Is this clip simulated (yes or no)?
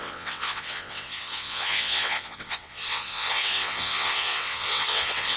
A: yes